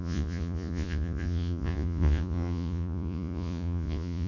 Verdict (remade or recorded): remade